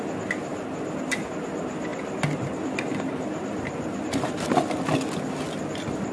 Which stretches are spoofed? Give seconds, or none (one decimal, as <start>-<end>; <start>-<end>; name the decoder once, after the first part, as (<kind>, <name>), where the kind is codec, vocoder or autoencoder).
none